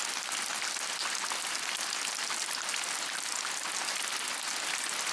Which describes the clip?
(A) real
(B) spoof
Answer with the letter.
A